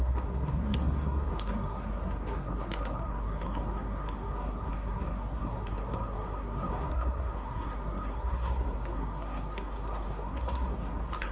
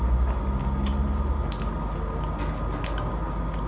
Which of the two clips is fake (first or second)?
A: first